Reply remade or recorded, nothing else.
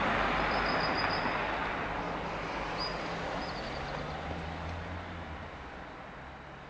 recorded